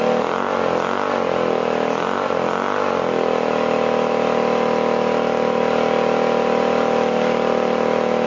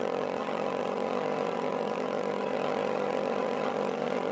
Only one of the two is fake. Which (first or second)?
second